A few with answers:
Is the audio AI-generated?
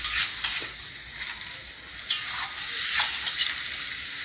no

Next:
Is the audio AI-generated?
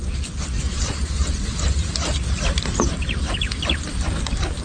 no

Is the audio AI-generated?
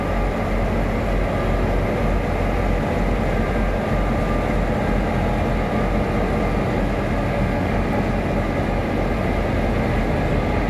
no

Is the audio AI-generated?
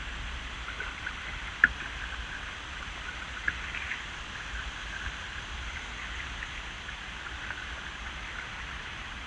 no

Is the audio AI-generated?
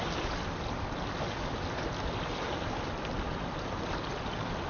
no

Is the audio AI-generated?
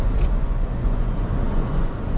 yes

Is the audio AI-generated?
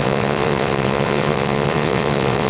yes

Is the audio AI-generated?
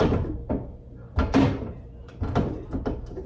no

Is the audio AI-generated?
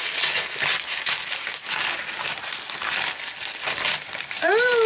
no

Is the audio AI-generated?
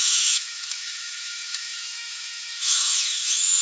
yes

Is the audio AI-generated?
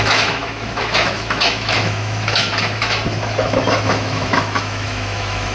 yes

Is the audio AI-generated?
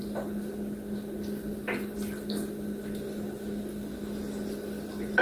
no